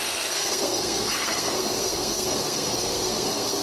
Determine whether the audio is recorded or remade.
remade